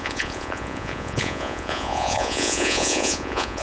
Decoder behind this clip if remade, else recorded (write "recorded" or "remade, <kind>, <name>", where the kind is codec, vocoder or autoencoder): remade, vocoder, Vocos